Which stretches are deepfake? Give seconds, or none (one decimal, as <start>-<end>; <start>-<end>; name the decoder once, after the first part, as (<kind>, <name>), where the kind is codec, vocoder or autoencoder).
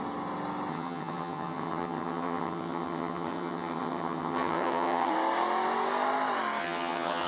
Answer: 0.7-5.1 (vocoder, HiFi-GAN); 6.6-7.3